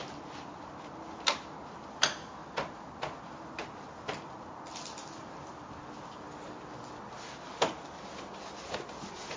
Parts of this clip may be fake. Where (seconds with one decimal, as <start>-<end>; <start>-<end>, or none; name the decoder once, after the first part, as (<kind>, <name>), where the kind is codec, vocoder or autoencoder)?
none